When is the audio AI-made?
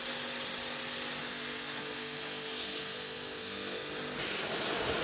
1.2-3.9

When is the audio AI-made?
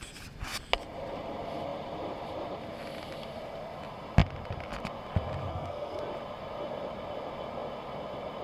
5.5-6.0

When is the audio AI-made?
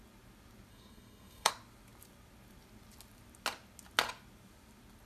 0.7-1.5